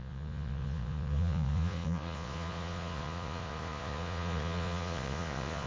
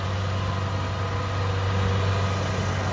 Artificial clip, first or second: first